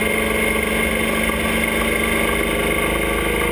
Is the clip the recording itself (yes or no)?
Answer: yes